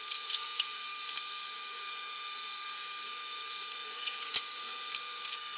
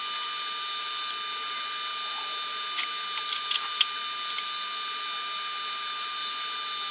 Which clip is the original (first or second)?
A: second